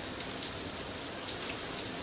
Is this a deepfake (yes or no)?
no